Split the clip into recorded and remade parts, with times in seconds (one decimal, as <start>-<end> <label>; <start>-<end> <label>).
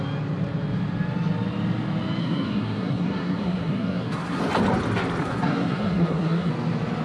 0.0-2.2 recorded; 2.2-4.4 remade; 4.4-5.2 recorded; 5.2-6.5 remade; 6.5-7.0 recorded